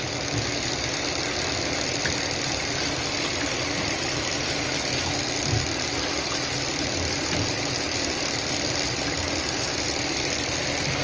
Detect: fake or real real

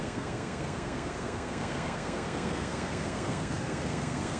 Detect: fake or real fake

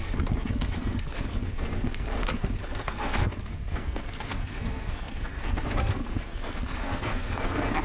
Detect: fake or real fake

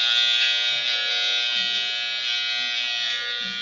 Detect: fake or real real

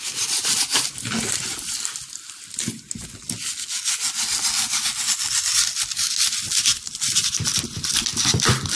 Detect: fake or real real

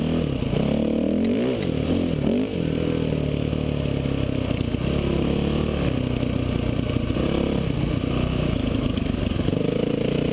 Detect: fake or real real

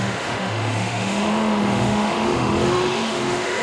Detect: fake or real fake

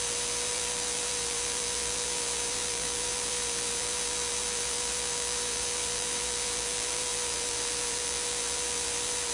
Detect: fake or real fake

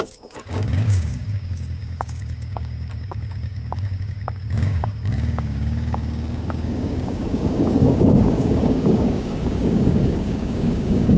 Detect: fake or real fake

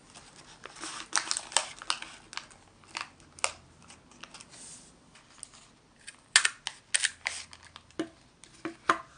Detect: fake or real real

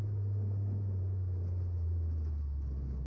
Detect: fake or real real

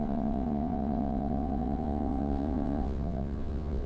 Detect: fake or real fake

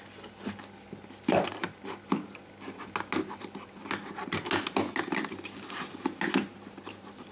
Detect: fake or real real